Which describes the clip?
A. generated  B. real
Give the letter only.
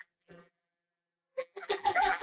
A